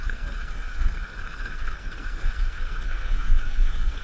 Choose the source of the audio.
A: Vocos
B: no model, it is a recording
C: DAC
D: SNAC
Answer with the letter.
D